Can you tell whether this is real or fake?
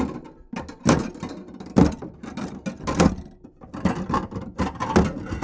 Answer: real